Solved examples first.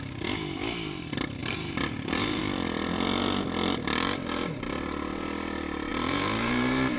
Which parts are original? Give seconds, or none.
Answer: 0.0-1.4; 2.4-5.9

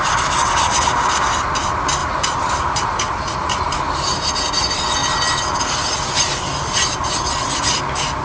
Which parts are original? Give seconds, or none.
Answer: 0.0-2.0; 4.3-8.2

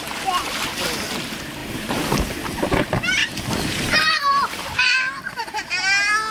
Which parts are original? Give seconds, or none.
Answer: 0.0-1.6; 2.6-3.2; 5.2-6.3

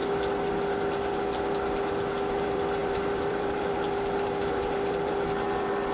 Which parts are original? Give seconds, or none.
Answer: 0.0-2.1

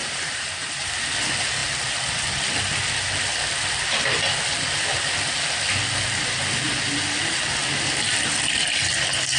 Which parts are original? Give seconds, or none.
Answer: 0.9-9.4